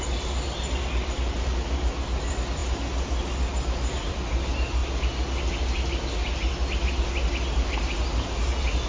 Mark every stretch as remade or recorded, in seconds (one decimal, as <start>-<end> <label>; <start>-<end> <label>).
0.0-8.9 recorded